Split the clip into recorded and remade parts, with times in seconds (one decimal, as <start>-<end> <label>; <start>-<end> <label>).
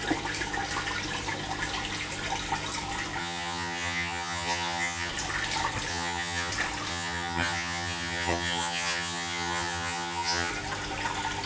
0.0-3.2 recorded; 3.2-5.1 remade; 5.1-5.9 recorded; 5.9-6.5 remade; 6.5-6.9 recorded; 6.9-10.5 remade; 10.5-11.5 recorded